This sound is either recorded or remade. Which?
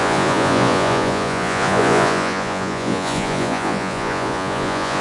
remade